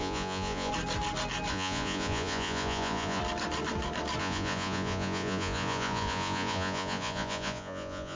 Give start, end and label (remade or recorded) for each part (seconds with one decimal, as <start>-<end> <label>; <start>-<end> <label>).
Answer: 0.0-0.7 remade; 0.7-1.5 recorded; 1.5-3.2 remade; 3.2-4.2 recorded; 4.2-8.2 remade

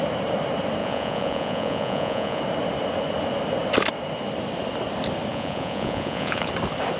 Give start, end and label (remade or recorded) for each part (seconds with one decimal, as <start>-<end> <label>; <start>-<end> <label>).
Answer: 0.0-0.8 recorded; 0.8-2.4 remade; 2.4-5.3 recorded; 5.3-6.5 remade; 6.5-7.0 recorded